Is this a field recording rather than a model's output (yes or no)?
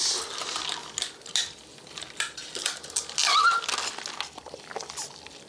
yes